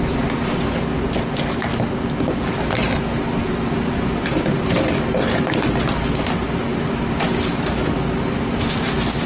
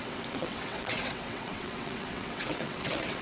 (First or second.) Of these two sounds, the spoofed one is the second